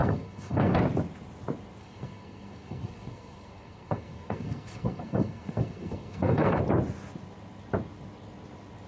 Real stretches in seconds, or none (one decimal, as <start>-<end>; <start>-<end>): 0.8-1.8; 6.6-8.9